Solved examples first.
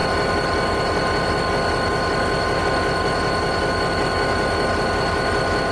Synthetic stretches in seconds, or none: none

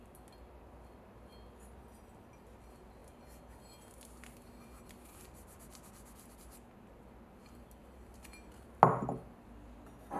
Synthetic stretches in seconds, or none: none

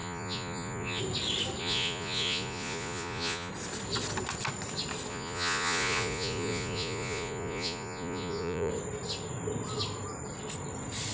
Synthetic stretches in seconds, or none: 0.0-1.0; 1.6-3.5; 5.1-8.7

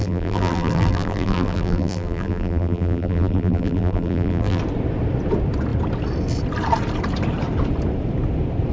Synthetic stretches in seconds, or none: 0.0-4.6

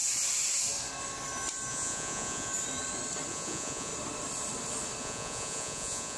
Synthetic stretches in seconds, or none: 1.7-2.5; 3.3-3.9; 5.0-6.2

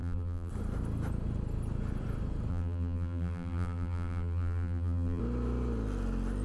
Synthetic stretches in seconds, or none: 0.0-0.5; 2.5-5.2

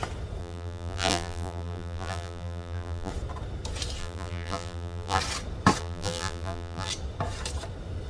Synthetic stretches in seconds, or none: 0.4-3.1; 4.0-5.2; 5.8-6.9